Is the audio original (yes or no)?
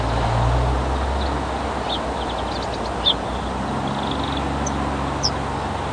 yes